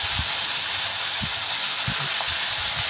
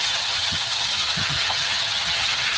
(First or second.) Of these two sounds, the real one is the first